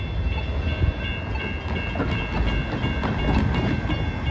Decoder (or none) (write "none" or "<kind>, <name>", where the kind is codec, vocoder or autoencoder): none